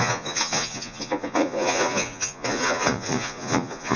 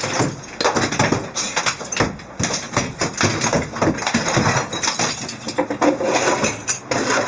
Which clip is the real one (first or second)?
second